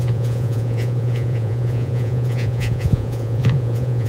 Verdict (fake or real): fake